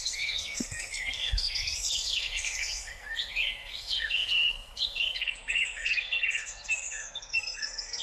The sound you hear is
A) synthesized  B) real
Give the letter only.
A